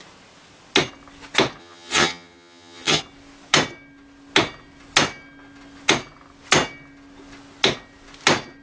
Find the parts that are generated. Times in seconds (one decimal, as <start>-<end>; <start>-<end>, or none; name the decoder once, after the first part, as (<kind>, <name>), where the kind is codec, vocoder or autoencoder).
1.6-3.0 (vocoder, HiFi-GAN)